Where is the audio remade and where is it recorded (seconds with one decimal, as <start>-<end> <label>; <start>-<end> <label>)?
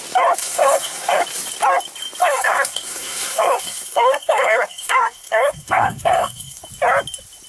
0.0-0.4 recorded; 0.4-1.2 remade; 1.2-2.2 recorded; 2.2-6.6 remade; 6.6-7.5 recorded